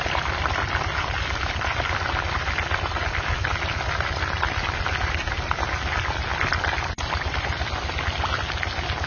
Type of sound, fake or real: real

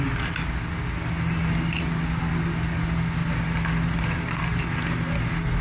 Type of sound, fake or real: real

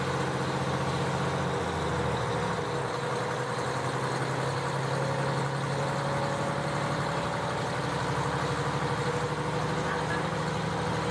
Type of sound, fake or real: real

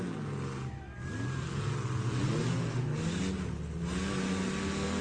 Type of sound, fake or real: real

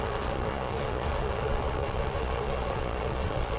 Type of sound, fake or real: fake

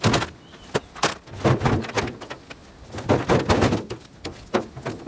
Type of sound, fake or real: real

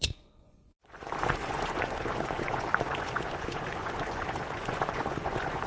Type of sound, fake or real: fake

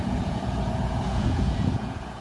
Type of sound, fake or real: fake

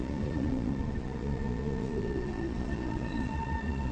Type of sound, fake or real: fake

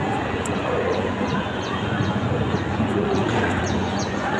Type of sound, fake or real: fake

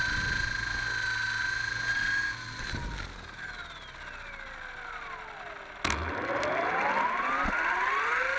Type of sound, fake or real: real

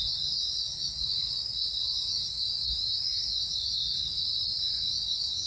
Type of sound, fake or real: real